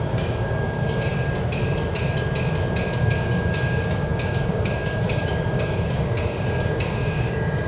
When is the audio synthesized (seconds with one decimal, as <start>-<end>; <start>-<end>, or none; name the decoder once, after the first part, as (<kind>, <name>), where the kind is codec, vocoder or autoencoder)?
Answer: 0.0-1.1 (codec, DAC); 3.0-7.7

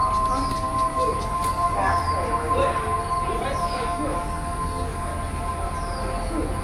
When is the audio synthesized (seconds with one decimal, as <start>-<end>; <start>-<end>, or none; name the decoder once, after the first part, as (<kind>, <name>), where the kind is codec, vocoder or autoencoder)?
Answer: 0.5-2.0 (codec, DAC); 3.6-5.1

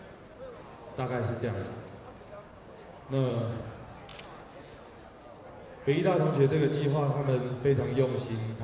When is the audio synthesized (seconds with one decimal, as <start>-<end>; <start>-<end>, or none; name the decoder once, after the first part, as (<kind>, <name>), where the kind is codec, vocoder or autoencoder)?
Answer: 1.6-3.3 (codec, DAC)

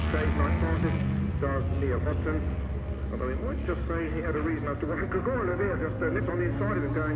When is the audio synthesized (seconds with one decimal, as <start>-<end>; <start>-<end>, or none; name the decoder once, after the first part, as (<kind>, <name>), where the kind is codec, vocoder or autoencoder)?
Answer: 3.6-4.1 (codec, DAC); 5.5-6.2

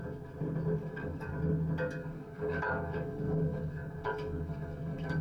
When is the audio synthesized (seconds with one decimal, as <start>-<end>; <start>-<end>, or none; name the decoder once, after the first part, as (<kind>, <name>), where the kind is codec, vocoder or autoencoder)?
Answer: 0.8-1.3 (codec, DAC); 2.0-5.2

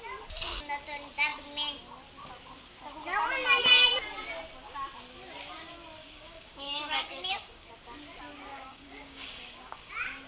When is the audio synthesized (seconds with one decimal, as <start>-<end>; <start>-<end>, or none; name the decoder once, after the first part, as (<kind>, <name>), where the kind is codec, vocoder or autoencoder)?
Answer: 6.0-7.7 (codec, DAC); 8.5-9.9

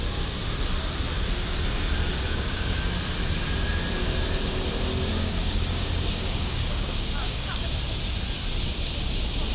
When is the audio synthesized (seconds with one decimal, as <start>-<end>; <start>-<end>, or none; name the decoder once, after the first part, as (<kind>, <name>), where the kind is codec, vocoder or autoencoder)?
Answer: 2.1-2.8 (codec, DAC); 5.1-7.7

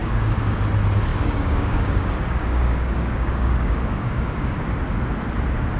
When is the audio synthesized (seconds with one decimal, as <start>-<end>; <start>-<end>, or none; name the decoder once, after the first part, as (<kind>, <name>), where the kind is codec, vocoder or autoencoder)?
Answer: 0.0-0.6 (codec, DAC); 1.1-4.6